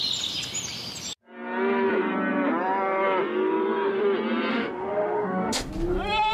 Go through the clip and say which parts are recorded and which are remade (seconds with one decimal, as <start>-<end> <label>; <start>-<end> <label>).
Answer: 0.0-4.5 recorded; 4.5-5.7 remade; 5.7-6.3 recorded